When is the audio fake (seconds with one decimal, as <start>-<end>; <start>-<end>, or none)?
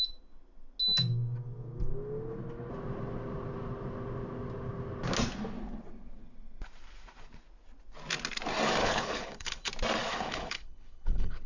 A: 8.8-9.7; 10.1-11.5